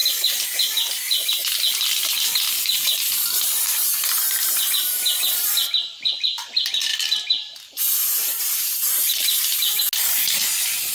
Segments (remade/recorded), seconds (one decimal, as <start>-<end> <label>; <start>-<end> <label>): 0.0-4.7 remade; 4.7-6.9 recorded; 6.9-9.8 remade; 9.8-10.9 recorded